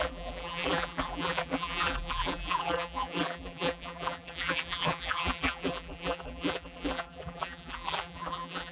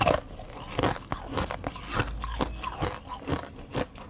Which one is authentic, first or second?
second